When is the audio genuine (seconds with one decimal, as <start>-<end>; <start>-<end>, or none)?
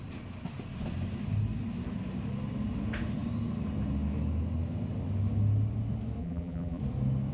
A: 0.0-6.2; 6.8-7.3